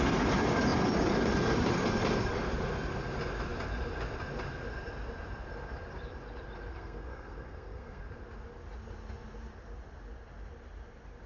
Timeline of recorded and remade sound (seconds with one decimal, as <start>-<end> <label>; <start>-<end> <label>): 0.0-6.7 recorded; 6.7-8.0 remade; 8.0-11.3 recorded